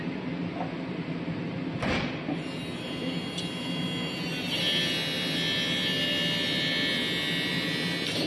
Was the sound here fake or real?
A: real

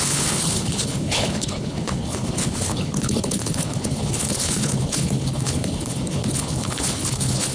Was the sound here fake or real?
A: fake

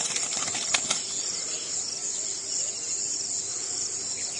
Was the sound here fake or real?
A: real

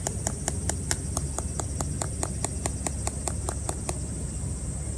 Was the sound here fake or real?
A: real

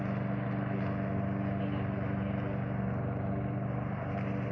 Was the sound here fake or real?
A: real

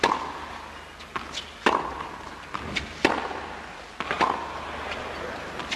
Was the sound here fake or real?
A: real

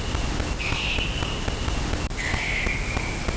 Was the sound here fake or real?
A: real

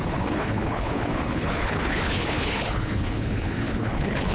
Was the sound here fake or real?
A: fake